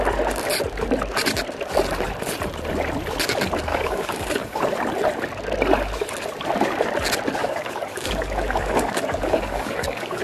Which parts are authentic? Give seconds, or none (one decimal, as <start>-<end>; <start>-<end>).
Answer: 0.0-3.7; 4.6-7.4